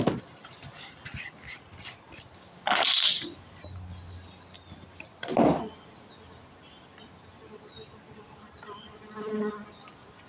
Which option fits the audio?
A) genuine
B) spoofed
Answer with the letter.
A